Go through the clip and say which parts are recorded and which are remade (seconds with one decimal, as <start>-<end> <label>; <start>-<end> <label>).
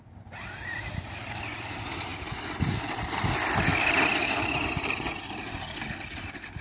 0.0-0.4 recorded; 0.4-1.1 remade; 1.1-6.6 recorded